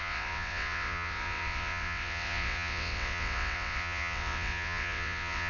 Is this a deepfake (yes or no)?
yes